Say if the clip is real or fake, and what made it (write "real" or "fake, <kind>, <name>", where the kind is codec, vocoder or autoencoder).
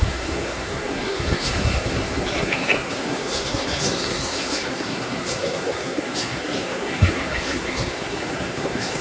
fake, codec, SNAC